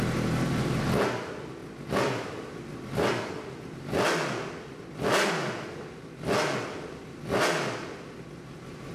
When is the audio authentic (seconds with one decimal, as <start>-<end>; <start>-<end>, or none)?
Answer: 0.0-8.9